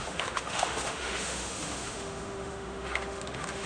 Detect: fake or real fake